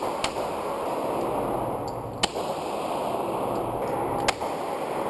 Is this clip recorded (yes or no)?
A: yes